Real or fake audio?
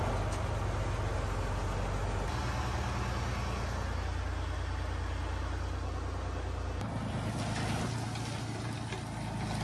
real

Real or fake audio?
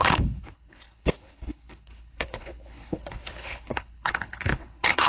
fake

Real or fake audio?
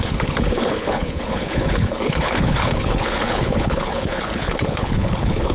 fake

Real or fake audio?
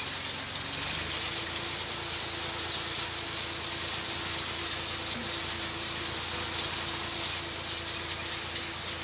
real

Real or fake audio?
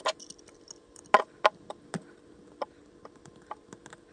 real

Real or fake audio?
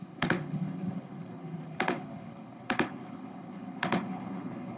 fake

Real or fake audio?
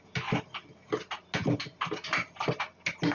real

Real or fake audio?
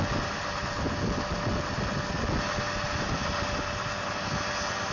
real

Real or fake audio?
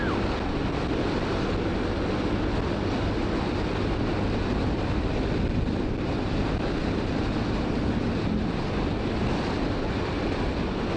real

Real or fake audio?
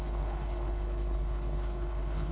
fake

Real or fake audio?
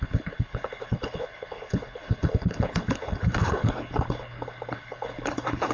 fake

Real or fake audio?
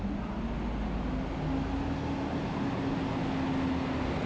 real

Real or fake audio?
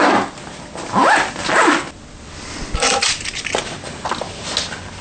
real